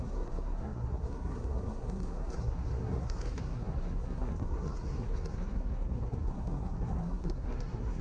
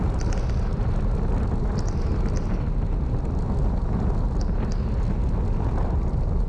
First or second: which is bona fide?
second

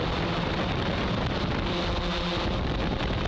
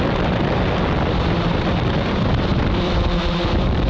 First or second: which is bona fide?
first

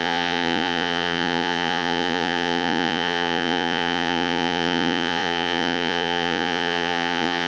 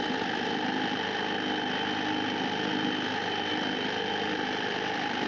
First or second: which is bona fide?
second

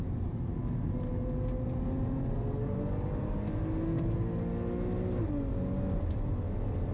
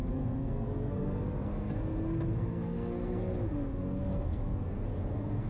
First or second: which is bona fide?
first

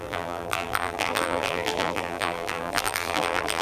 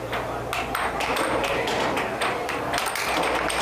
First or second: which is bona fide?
second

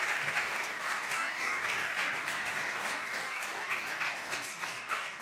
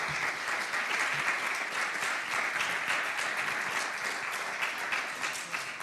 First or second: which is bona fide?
second